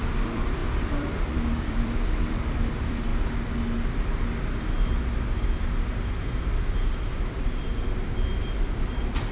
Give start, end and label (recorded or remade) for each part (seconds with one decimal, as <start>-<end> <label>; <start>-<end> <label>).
0.0-3.1 remade; 3.1-6.9 recorded; 6.9-9.3 remade

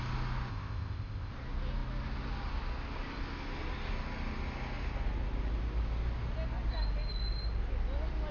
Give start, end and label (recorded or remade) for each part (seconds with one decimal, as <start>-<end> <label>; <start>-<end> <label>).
0.0-0.5 recorded; 0.5-1.3 remade; 1.3-8.3 recorded

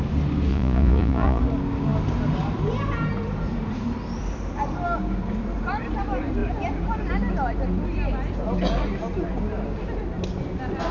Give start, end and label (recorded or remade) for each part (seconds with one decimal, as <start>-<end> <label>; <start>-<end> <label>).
0.0-0.5 recorded; 0.5-1.4 remade; 1.4-10.9 recorded

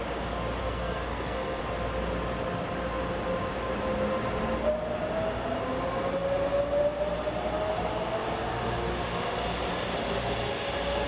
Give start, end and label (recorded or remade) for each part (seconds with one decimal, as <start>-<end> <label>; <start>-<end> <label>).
0.0-0.6 recorded; 0.6-1.6 remade; 1.6-11.1 recorded

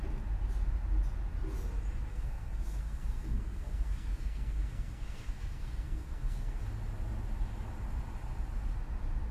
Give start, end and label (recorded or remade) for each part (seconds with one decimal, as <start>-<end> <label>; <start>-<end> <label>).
0.0-2.1 recorded; 2.1-6.6 remade; 6.6-9.3 recorded

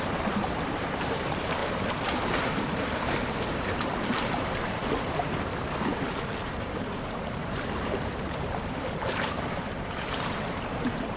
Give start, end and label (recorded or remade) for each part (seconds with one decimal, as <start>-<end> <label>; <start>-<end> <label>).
0.0-1.6 remade; 1.6-2.5 recorded; 2.5-4.8 remade; 4.8-6.0 recorded; 6.0-11.2 remade